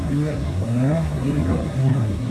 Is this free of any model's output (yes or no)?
no